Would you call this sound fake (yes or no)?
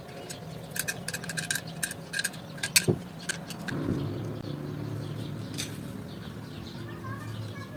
no